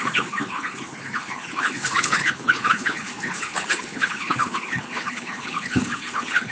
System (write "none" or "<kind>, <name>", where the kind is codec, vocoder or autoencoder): codec, HILCodec